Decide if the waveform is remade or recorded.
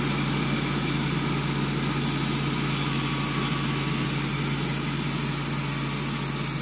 recorded